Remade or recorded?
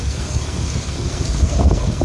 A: remade